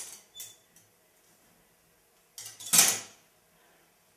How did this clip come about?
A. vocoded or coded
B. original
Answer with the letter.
B